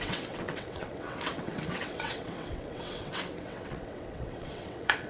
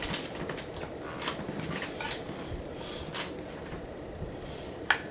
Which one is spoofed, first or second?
first